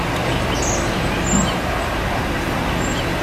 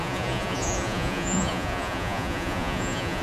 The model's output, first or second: second